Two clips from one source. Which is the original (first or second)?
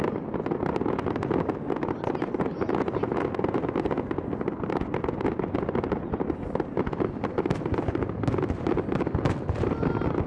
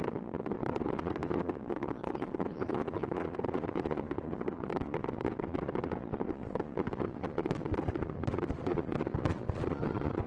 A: first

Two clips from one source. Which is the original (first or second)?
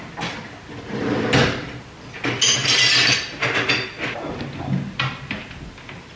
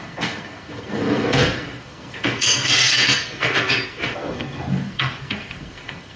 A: first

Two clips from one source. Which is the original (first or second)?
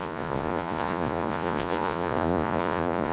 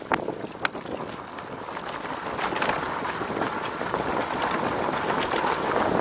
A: second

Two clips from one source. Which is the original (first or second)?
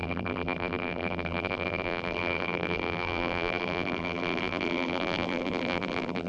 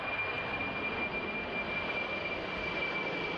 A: second